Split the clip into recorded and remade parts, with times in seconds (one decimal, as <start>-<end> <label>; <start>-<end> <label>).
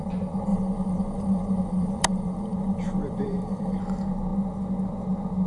0.0-0.5 recorded; 0.5-3.8 remade; 3.8-5.5 recorded